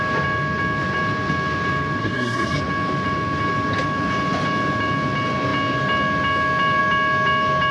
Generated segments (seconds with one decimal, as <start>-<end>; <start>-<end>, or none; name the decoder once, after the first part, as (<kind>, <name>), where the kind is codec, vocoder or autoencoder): 2.0-2.6 (codec, SNAC)

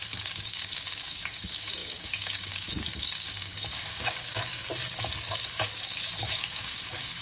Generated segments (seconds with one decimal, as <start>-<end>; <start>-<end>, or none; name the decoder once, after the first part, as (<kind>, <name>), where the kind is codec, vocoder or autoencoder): 0.0-4.7 (codec, DAC); 5.3-7.2

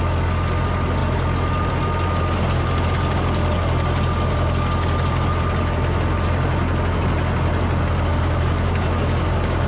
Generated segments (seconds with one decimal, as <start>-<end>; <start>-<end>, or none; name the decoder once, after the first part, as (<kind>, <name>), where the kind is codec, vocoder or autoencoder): 8.1-9.7 (codec, DAC)

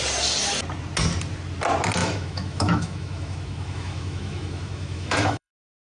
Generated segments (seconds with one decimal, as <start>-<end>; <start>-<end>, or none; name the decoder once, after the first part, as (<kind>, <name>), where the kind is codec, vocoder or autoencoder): 2.0-5.5 (autoencoder, DAC-VAE)

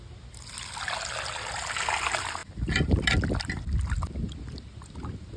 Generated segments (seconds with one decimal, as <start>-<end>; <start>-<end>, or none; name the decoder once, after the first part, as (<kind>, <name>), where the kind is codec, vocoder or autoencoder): none

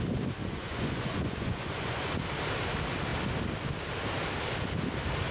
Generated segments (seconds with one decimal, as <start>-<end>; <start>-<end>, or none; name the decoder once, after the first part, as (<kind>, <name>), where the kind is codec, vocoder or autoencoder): 0.4-2.1 (vocoder, Vocos)

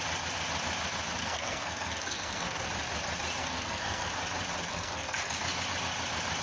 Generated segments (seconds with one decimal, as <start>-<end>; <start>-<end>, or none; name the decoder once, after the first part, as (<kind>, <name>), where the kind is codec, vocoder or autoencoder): 1.2-2.7 (codec, SNAC); 3.4-4.1; 4.7-5.4